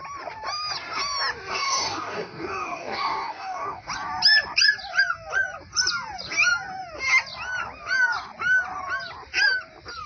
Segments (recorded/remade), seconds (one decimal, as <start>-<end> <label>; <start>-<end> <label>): 0.0-1.5 recorded; 1.5-3.9 remade; 3.9-10.1 recorded